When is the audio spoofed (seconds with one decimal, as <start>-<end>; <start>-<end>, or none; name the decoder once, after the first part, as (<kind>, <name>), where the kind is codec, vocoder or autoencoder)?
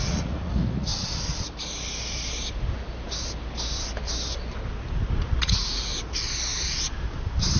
0.0-0.9 (vocoder, Vocos); 5.4-5.9